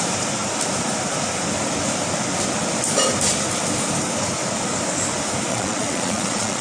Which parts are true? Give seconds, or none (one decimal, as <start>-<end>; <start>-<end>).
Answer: 0.0-5.5